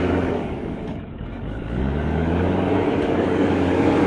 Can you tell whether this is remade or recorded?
remade